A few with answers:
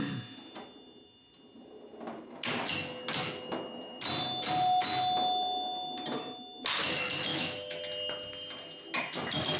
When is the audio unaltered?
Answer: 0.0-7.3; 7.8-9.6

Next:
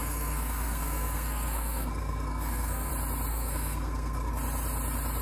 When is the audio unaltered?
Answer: 2.9-3.3; 4.3-5.2

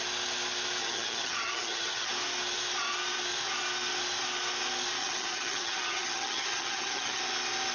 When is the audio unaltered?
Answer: 0.0-0.8; 2.1-5.0; 7.2-7.7

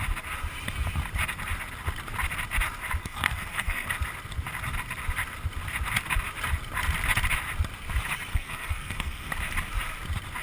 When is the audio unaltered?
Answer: 0.0-3.0; 3.9-8.3; 9.3-10.4